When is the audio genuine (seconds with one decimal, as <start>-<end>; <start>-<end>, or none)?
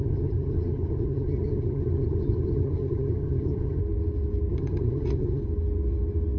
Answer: 3.8-4.5; 5.4-6.4